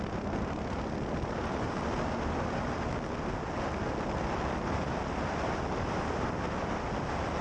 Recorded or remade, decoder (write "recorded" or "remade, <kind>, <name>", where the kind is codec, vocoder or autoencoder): recorded